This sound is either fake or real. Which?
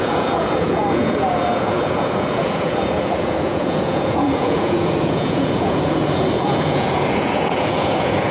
fake